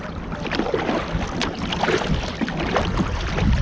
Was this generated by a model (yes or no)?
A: no